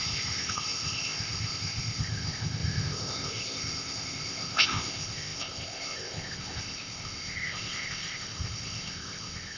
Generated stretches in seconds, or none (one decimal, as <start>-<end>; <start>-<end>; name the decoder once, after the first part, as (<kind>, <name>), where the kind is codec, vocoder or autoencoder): 0.0-9.6 (codec, ZipCodec)